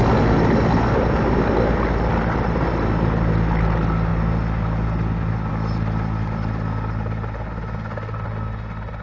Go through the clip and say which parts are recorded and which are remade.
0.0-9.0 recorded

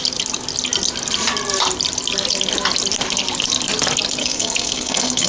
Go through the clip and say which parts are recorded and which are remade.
0.0-4.2 recorded; 4.2-5.3 remade